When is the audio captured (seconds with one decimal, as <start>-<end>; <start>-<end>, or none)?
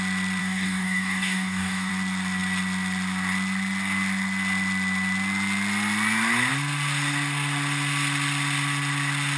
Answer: 0.0-0.4; 1.9-9.4